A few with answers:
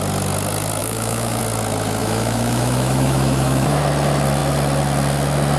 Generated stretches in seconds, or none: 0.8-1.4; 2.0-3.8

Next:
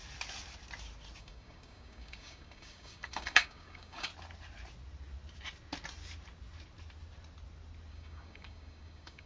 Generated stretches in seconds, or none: 1.2-4.1; 7.9-9.3

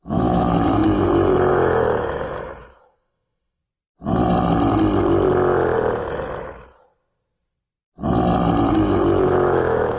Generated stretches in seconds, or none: 0.0-3.6; 8.7-10.0

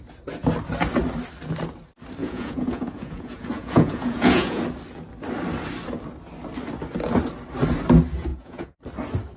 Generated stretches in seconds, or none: 2.2-4.6; 8.3-8.8

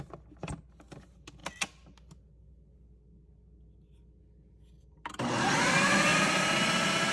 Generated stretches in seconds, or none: none

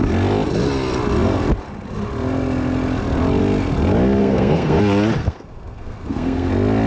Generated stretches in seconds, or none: 4.2-4.8; 5.2-6.5

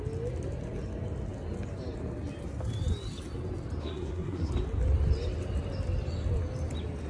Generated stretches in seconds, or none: 3.8-4.5

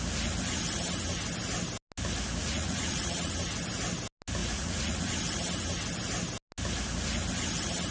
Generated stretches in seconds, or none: 2.4-3.3; 4.4-5.1